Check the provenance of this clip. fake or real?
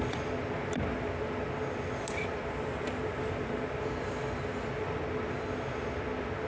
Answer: real